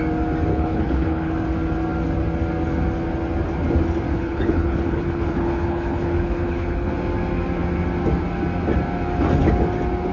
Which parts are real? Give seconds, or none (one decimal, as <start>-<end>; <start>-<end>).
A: 0.0-0.5; 1.3-4.1; 6.9-10.1